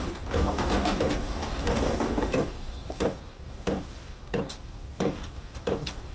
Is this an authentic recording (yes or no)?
no